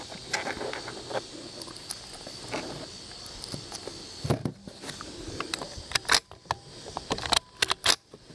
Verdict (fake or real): real